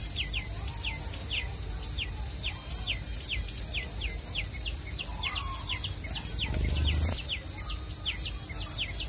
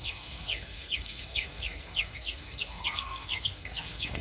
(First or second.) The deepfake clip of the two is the second